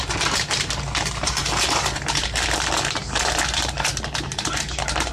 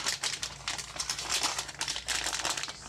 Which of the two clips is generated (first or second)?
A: first